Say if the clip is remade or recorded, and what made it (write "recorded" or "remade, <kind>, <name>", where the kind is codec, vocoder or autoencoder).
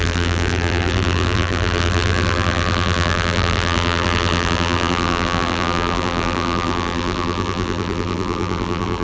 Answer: remade, vocoder, BigVGAN v2